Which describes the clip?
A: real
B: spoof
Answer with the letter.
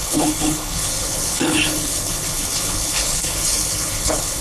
B